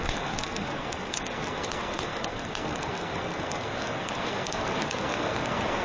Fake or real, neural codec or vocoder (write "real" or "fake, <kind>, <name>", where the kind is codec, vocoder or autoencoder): fake, codec, SNAC